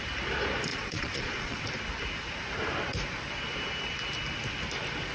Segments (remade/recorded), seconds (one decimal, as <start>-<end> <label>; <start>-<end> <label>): 0.0-0.7 recorded; 0.7-1.6 remade; 1.6-5.1 recorded